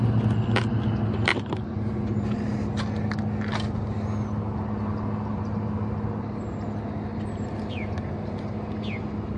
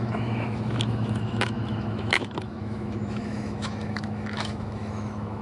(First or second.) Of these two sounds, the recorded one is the first